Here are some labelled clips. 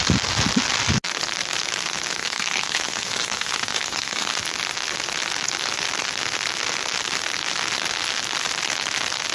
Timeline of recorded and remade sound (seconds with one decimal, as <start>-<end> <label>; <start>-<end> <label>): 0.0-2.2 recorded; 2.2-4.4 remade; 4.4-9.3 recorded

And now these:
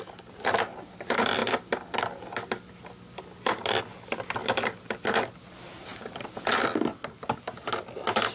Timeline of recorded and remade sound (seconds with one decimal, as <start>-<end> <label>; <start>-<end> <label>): 0.0-1.4 recorded; 1.4-2.0 remade; 2.0-5.9 recorded; 5.9-6.8 remade; 6.8-8.3 recorded

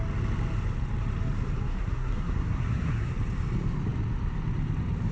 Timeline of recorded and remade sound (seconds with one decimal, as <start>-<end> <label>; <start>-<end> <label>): 0.0-1.7 recorded; 1.7-3.1 remade; 3.1-5.1 recorded

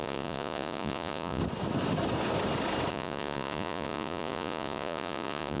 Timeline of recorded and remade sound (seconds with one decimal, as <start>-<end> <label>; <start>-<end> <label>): 0.0-1.4 remade; 1.4-2.9 recorded; 2.9-5.6 remade

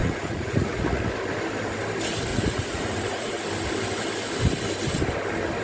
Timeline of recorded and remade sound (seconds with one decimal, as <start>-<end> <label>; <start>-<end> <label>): 0.0-1.0 remade; 1.0-2.3 recorded; 2.3-3.4 remade; 3.4-5.6 recorded

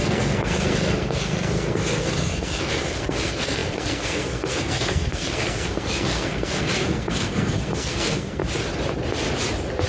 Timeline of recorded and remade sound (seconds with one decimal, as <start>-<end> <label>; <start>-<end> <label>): 0.0-8.4 remade; 8.4-9.9 recorded